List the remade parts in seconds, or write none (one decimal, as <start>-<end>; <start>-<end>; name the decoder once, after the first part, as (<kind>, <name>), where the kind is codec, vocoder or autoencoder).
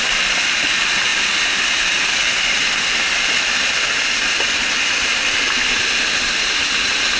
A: none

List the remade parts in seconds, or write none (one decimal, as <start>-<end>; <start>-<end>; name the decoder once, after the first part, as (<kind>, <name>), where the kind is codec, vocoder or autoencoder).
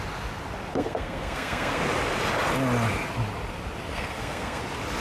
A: 0.7-1.8 (codec, SNAC); 3.9-4.6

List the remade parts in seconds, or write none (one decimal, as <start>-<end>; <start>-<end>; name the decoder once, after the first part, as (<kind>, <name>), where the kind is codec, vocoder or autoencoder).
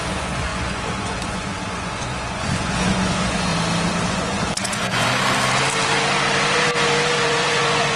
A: 0.0-3.5 (vocoder, Vocos); 4.1-5.1; 7.2-8.0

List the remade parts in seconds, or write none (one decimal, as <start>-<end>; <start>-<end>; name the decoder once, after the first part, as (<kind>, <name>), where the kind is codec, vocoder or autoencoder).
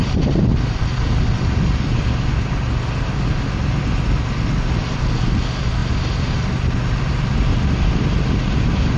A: 0.5-1.9 (vocoder, BigVGAN v2)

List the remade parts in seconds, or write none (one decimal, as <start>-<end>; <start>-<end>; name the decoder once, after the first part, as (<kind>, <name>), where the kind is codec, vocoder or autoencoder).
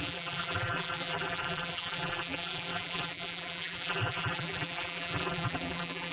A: 0.0-6.1 (vocoder, BigVGAN v2)